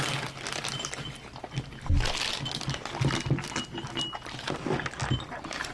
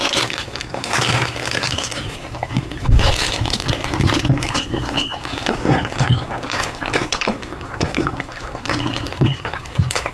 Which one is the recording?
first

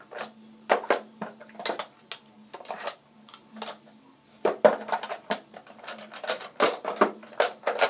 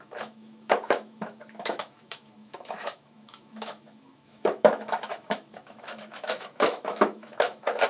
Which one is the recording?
first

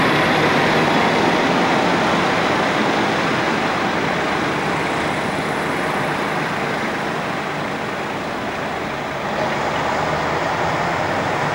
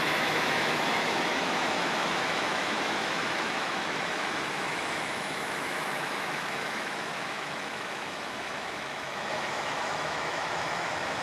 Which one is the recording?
first